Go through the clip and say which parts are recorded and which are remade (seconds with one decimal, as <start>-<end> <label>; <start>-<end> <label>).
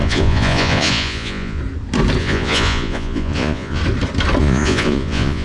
0.0-1.6 remade; 1.6-2.2 recorded; 2.2-3.8 remade; 3.8-4.4 recorded; 4.4-5.4 remade